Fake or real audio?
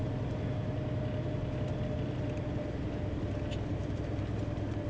real